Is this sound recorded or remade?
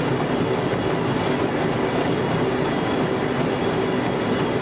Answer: recorded